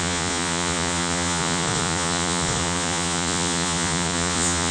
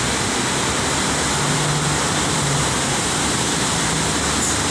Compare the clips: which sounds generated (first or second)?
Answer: first